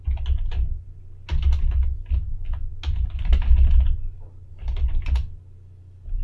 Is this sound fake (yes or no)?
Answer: no